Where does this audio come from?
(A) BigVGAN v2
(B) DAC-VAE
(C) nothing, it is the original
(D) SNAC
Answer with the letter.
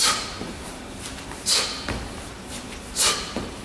A